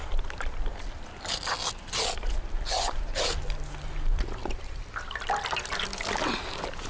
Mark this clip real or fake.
real